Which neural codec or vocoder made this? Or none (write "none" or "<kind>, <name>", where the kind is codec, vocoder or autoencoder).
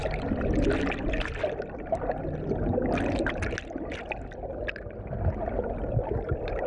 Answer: none